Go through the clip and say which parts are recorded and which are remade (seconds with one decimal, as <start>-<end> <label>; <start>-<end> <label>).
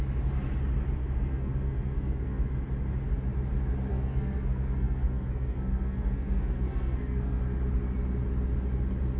0.0-1.0 recorded; 1.0-2.4 remade; 2.4-3.9 recorded; 3.9-7.4 remade; 7.4-9.2 recorded